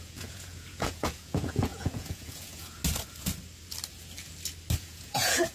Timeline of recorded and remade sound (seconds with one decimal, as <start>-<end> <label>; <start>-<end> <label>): 0.0-2.8 remade; 2.8-4.8 recorded; 4.8-5.5 remade